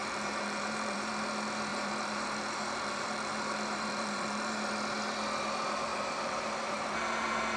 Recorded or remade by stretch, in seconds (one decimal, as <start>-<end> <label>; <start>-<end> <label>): 0.0-1.1 remade; 1.1-1.7 recorded; 1.7-4.7 remade; 4.7-5.9 recorded; 5.9-6.9 remade; 6.9-7.6 recorded